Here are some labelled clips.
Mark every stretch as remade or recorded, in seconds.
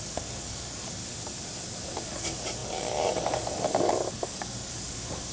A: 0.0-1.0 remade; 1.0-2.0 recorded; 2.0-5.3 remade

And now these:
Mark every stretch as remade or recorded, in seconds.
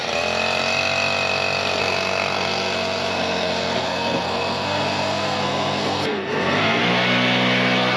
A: 0.0-1.8 recorded; 1.8-6.8 remade; 6.8-8.0 recorded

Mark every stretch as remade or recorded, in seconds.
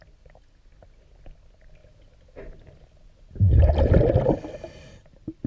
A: 0.0-5.5 recorded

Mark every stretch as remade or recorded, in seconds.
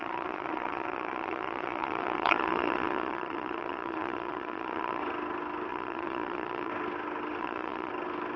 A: 0.0-5.0 remade; 5.0-5.7 recorded; 5.7-6.7 remade; 6.7-7.4 recorded; 7.4-7.9 remade; 7.9-8.4 recorded